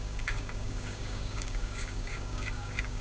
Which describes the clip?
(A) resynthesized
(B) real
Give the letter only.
A